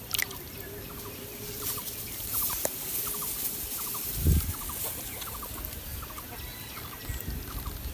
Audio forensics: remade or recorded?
recorded